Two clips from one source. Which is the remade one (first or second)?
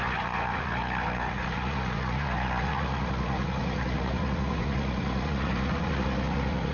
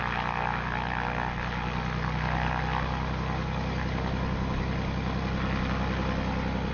first